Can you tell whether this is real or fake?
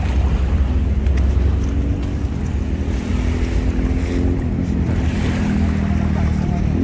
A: real